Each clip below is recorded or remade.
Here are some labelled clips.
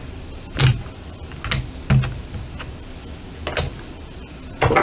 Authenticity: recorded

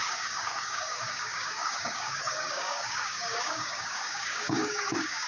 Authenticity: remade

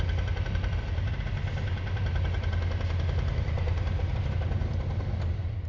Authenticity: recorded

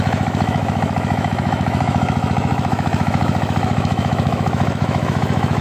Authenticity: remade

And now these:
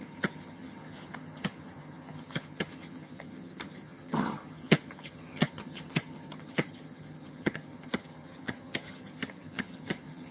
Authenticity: remade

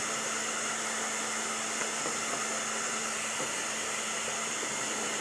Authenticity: recorded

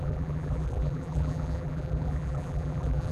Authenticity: remade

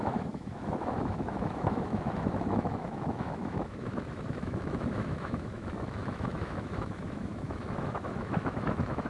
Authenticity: remade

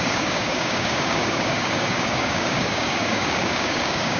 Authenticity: remade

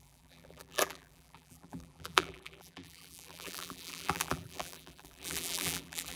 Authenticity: remade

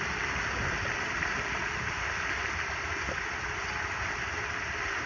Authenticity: recorded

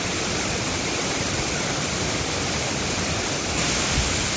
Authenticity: recorded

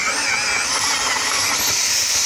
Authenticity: recorded